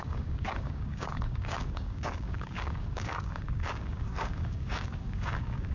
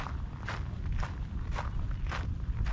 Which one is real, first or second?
second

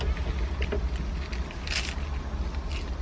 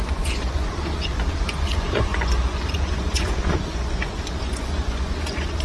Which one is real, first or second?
first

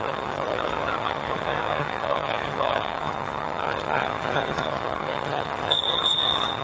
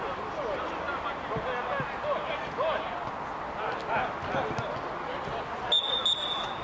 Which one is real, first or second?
second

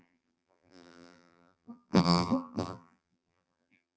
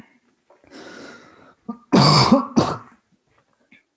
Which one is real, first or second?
second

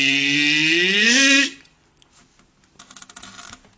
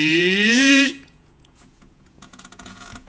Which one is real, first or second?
first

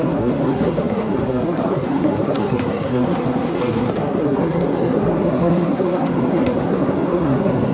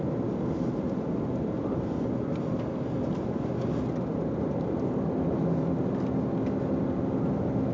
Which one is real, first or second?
second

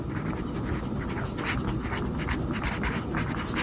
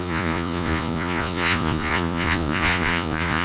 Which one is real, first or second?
first